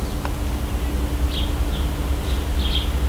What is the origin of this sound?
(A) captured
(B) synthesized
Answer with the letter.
A